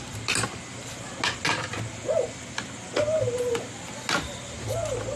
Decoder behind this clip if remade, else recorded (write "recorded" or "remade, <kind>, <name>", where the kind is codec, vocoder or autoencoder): recorded